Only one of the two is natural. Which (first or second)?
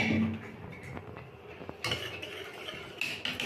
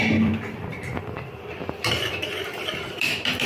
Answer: first